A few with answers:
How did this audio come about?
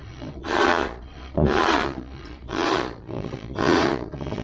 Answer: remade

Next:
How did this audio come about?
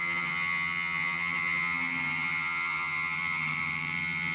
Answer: remade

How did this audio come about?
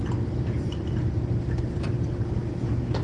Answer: remade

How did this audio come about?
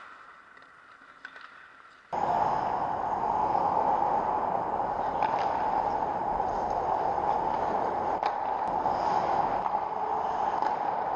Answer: recorded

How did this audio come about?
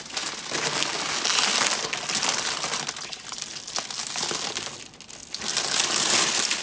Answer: recorded